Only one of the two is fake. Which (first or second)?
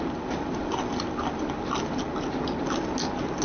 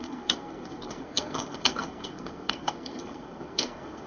second